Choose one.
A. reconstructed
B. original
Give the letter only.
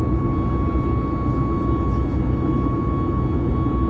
B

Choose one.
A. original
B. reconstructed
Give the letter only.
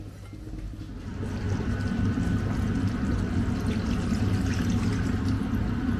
A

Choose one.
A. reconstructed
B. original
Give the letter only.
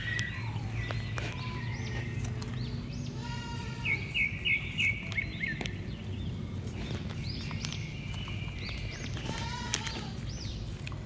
B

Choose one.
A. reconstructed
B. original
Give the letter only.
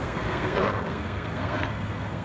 A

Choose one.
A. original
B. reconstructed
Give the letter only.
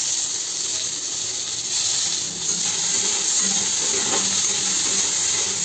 A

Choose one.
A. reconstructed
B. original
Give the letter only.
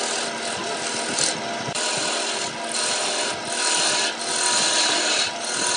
B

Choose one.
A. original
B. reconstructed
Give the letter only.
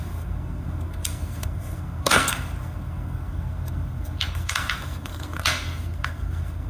B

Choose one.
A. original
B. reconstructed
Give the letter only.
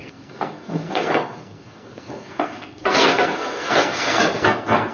B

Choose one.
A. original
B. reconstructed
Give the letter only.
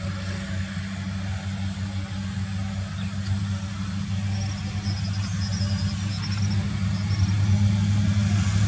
A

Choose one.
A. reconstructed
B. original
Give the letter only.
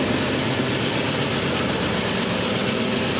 B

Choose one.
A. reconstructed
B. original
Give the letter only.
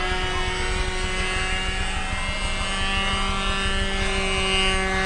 B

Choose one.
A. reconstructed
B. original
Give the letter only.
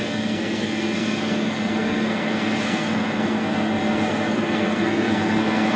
A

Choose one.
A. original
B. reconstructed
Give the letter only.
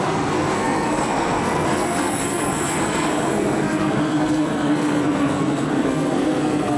B